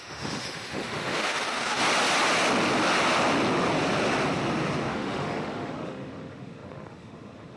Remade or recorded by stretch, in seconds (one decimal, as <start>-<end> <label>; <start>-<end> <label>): 0.0-1.8 remade; 1.8-4.9 recorded; 4.9-7.6 remade